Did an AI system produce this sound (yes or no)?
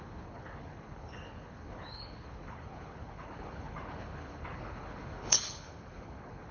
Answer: yes